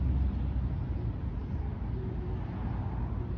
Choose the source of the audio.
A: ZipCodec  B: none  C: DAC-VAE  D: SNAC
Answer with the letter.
B